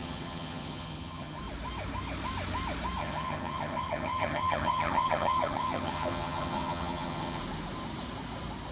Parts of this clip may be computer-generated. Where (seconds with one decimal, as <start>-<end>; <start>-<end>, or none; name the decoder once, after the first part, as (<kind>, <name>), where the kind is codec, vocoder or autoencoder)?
0.0-1.4 (vocoder, HiFi-GAN); 3.0-7.4